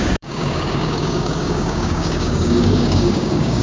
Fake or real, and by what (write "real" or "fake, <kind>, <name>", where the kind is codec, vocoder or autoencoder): fake, codec, DAC